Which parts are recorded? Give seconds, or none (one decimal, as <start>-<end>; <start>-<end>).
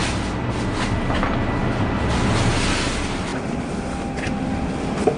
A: 0.0-5.2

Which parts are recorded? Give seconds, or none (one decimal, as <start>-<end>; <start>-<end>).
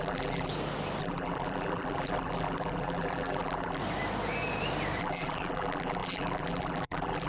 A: 0.5-1.0; 3.8-5.0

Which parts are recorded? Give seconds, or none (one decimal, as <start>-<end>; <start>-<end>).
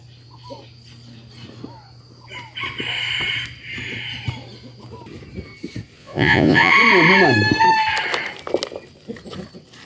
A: 0.0-6.0; 6.7-9.9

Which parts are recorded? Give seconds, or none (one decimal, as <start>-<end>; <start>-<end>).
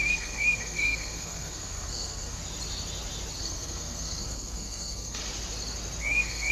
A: 2.4-3.4; 5.2-6.0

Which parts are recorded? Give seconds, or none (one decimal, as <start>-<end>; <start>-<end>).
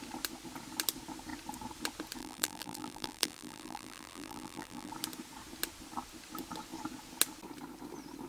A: 0.0-2.2; 4.9-8.3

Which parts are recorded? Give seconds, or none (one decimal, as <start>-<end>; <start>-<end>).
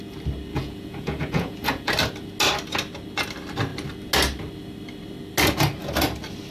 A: 0.0-0.5; 1.9-6.5